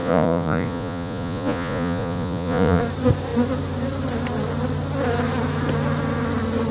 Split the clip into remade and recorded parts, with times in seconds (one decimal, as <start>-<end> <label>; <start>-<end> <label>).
0.0-2.8 remade; 2.8-6.7 recorded